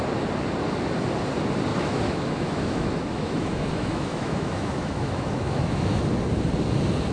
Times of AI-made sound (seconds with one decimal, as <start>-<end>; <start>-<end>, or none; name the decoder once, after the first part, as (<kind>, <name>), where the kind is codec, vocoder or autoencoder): 1.7-6.0 (autoencoder, DAC-VAE)